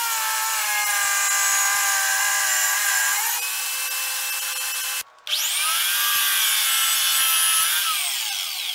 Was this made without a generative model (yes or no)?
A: yes